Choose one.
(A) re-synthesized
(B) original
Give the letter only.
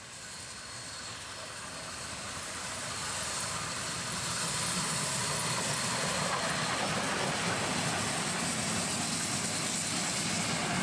B